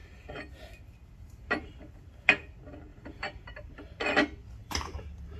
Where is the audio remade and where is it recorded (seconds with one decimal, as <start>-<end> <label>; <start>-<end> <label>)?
0.0-2.9 recorded; 2.9-4.0 remade; 4.0-4.6 recorded; 4.6-5.4 remade